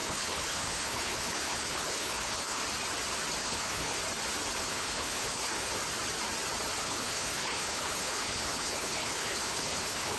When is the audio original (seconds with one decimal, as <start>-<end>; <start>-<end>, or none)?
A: 2.6-3.4; 4.0-4.6; 5.7-6.8

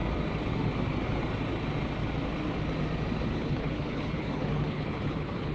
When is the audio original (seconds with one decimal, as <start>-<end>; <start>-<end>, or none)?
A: 0.0-3.3

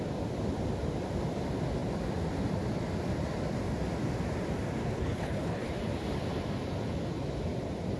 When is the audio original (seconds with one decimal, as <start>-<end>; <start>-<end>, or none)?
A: 0.0-4.8; 5.7-8.0

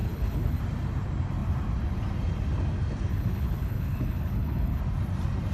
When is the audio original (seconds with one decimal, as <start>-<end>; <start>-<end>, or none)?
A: 0.6-3.1; 4.8-5.5